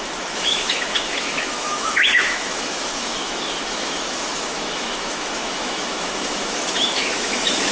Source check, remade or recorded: remade